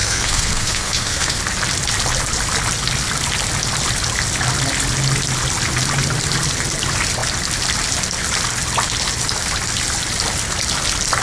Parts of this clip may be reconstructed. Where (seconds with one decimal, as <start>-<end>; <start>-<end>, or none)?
0.0-1.4